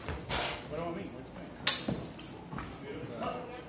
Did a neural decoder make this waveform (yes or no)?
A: no